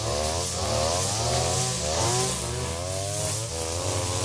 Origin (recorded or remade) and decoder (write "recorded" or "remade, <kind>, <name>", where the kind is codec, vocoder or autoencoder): recorded